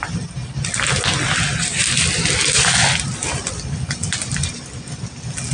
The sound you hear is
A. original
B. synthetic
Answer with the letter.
A